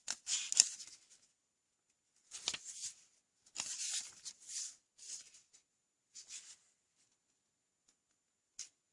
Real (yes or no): yes